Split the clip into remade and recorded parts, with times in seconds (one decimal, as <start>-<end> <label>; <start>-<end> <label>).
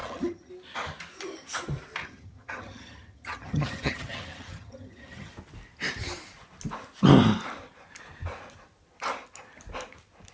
0.0-0.5 remade; 0.5-2.0 recorded; 2.0-5.3 remade; 5.3-10.3 recorded